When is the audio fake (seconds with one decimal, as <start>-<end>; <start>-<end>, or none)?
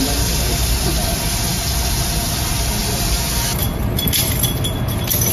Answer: none